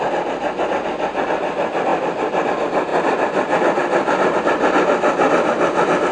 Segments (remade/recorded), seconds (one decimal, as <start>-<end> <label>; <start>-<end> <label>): 0.0-2.9 recorded; 2.9-4.4 remade; 4.4-6.1 recorded